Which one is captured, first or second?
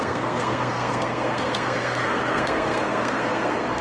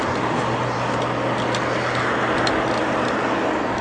second